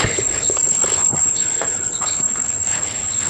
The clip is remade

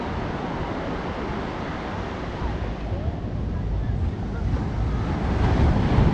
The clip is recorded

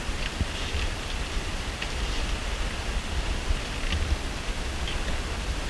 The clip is recorded